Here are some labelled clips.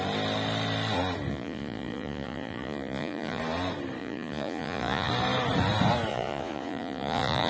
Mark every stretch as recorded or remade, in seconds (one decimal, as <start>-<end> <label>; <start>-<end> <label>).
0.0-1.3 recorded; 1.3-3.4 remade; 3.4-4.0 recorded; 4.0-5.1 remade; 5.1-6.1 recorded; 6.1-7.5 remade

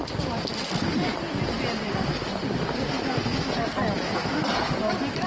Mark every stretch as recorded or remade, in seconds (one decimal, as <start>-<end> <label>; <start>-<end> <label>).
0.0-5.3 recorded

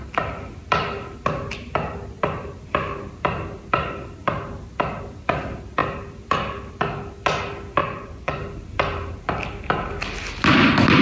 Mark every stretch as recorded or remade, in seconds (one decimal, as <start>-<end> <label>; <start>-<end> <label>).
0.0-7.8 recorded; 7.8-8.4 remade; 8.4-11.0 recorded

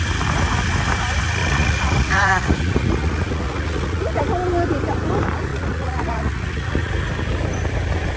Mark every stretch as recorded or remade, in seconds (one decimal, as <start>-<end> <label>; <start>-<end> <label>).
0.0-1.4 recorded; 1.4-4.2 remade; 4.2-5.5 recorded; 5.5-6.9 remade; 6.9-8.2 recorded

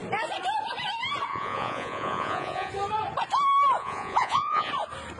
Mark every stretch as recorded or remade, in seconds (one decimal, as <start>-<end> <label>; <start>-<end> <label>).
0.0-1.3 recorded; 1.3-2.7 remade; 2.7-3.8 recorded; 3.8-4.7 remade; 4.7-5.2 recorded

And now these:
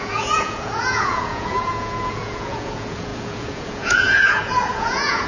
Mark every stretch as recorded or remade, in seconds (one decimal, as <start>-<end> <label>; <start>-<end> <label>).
0.0-5.3 remade

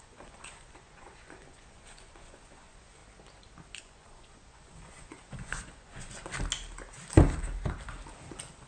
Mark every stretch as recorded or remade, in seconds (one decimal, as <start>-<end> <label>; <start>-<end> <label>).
0.0-3.0 remade; 3.0-3.8 recorded; 3.8-6.2 remade; 6.2-8.7 recorded

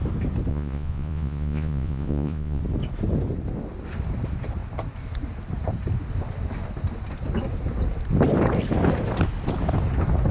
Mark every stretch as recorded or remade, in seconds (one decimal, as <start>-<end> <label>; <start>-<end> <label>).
0.0-0.5 recorded; 0.5-2.6 remade; 2.6-10.3 recorded